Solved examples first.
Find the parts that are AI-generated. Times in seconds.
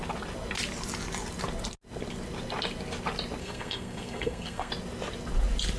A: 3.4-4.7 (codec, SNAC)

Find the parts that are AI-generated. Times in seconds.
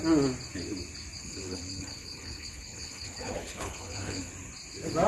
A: 1.2-4.3 (codec, HILCodec)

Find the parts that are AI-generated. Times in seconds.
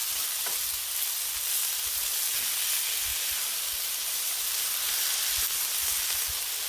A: 0.0-0.9 (vocoder, BigVGAN v2); 3.1-4.3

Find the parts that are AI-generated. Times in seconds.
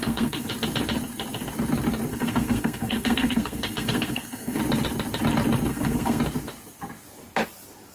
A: 0.0-0.5 (codec, SNAC); 2.1-4.6; 5.7-6.2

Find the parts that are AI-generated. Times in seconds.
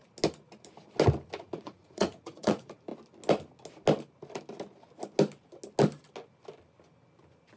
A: 1.4-2.9 (vocoder, Vocos)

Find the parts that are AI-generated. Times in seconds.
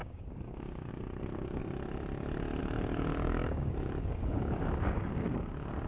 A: 0.0-1.6 (codec, DAC); 2.6-5.9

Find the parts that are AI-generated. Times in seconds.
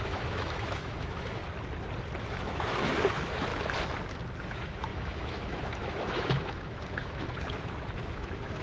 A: 0.0-1.4 (autoencoder, DAC-VAE); 2.2-3.5; 4.4-8.6